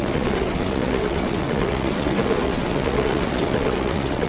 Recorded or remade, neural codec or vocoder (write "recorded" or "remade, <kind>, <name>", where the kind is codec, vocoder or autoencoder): remade, vocoder, WaveNeXt